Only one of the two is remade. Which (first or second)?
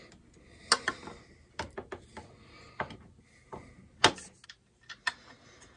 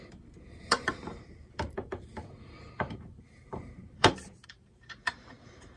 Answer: second